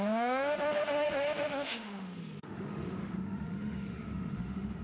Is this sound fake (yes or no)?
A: yes